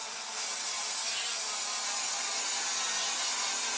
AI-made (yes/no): no